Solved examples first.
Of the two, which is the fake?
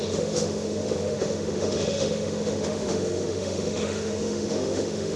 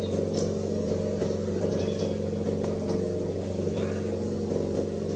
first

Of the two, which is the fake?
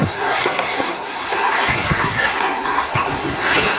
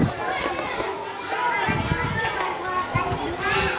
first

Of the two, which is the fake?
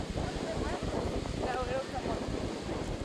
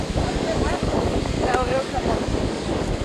second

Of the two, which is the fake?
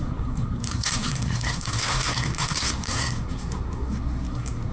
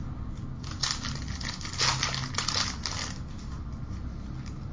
first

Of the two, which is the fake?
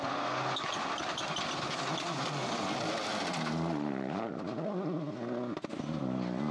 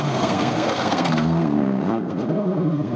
second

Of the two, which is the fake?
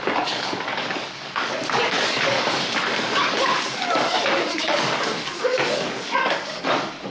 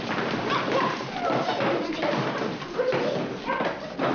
first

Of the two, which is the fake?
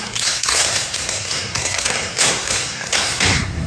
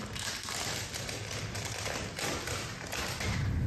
first